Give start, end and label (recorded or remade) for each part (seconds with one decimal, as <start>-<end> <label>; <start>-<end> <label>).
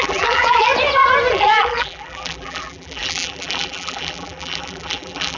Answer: 0.0-0.7 remade; 0.7-1.3 recorded; 1.3-5.4 remade